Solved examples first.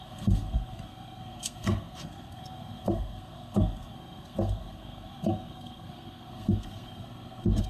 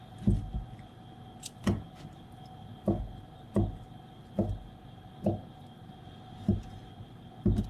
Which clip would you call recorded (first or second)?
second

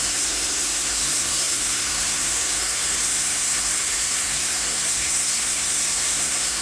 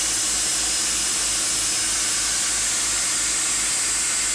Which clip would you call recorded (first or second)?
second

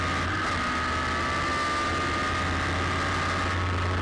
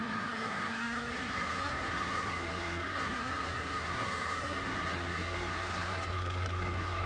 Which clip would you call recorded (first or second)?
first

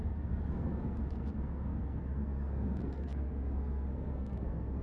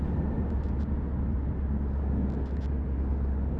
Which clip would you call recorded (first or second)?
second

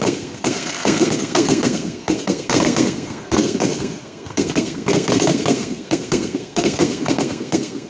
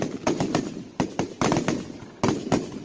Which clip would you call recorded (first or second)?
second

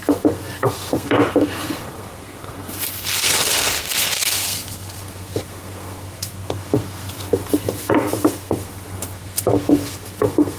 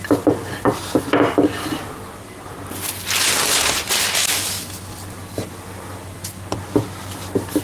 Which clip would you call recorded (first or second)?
second